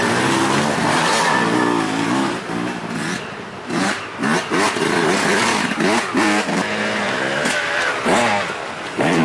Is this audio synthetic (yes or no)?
no